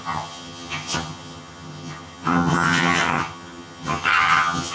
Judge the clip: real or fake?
fake